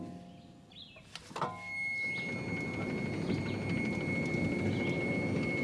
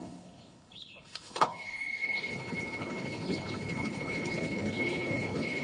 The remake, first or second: second